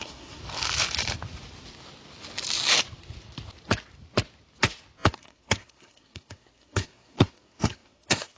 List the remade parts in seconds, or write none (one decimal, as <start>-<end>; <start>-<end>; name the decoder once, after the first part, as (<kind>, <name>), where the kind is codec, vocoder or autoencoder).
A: 0.0-0.4 (codec, SNAC); 5.0-8.4

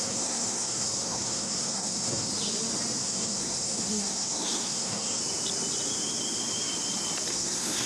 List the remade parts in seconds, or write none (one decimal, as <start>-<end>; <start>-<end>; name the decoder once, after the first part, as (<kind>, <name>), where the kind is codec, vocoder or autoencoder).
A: 0.0-2.3 (codec, SNAC); 3.0-5.2; 7.3-7.9

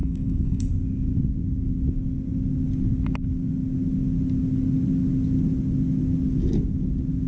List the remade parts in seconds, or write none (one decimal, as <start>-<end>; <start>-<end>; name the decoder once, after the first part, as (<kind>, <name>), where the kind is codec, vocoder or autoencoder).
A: 0.0-0.7 (codec, SNAC)